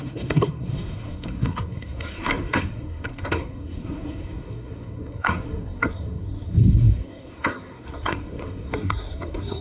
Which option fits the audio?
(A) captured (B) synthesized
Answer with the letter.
B